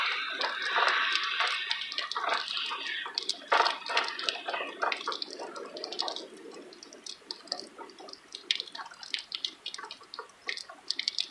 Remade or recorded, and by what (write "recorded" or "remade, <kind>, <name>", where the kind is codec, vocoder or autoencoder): recorded